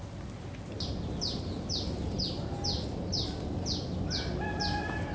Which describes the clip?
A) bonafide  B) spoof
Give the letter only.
A